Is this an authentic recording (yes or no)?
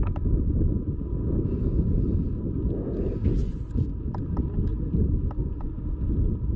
yes